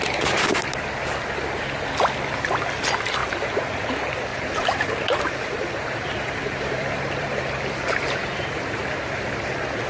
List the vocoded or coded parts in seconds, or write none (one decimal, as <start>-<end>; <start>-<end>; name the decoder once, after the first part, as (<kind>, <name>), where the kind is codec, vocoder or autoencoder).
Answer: 3.2-3.9 (vocoder, BigVGAN v2); 4.3-9.3